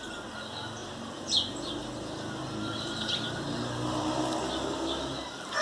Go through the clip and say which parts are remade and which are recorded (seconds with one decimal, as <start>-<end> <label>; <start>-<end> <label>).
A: 0.0-0.8 recorded; 0.8-4.2 remade; 4.2-5.6 recorded